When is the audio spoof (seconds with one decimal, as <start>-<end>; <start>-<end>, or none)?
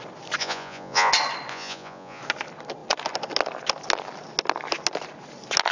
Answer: 0.4-1.1; 1.5-2.2